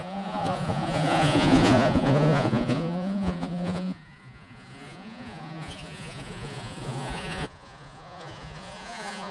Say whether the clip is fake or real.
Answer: fake